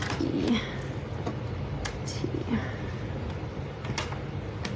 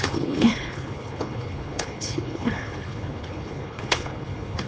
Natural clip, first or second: first